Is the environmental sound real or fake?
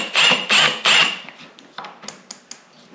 real